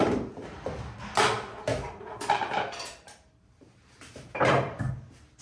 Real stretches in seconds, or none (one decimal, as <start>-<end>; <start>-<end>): 0.0-1.7; 4.9-5.4